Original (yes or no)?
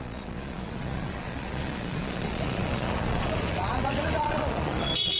no